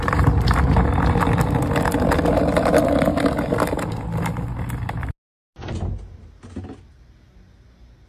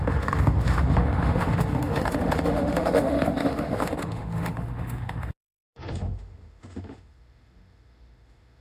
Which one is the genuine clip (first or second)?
first